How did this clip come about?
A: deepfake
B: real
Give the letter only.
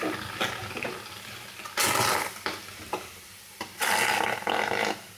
A